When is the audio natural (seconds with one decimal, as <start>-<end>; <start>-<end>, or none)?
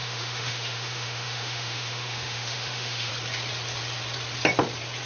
3.1-5.1